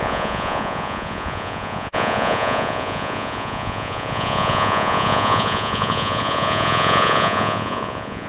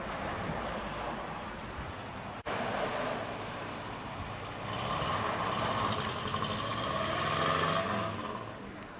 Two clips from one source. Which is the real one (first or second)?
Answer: second